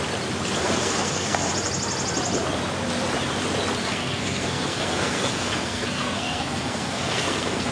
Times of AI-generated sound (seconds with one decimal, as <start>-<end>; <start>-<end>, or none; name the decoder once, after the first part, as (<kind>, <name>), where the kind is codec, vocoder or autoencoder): 0.6-1.5 (codec, SNAC); 3.8-7.7